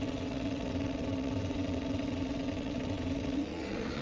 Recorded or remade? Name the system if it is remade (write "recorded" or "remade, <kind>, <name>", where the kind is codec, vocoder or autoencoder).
remade, vocoder, WaveNeXt